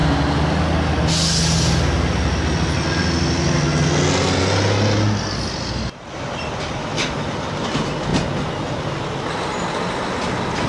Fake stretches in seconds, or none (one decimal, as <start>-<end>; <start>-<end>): none